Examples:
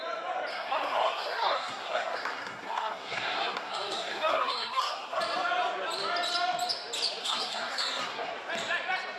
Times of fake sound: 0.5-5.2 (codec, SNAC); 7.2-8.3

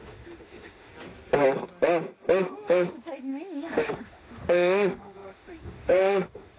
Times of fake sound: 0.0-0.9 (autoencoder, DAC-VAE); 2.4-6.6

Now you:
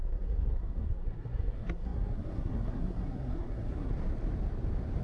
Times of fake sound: 0.0-3.9 (codec, SNAC)

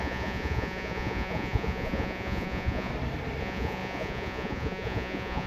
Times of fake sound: 0.0-2.9 (vocoder, Vocos); 3.4-5.5